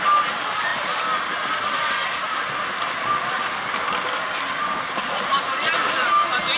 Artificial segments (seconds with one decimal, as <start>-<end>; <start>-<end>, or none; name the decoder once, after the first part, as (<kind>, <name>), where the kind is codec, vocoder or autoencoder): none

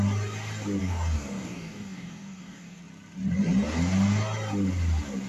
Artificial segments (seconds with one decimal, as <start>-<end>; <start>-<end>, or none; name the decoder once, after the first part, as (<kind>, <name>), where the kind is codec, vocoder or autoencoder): 0.8-2.8 (codec, DAC)

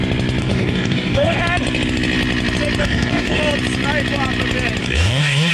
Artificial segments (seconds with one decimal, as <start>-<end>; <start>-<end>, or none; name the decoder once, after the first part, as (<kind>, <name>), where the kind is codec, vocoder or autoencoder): 0.4-1.4 (codec, DAC); 2.8-3.4; 4.8-5.5

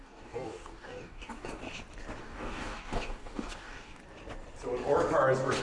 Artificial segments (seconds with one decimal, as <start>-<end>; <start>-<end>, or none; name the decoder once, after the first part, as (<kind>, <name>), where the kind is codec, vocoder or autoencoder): 0.0-1.6 (codec, DAC); 2.2-4.0

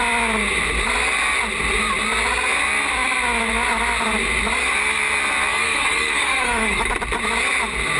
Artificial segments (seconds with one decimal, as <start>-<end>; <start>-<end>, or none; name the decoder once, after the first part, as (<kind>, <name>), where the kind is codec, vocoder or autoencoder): 5.5-6.9 (codec, DAC)